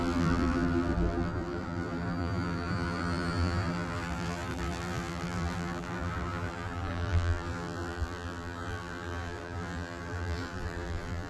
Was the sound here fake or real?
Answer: fake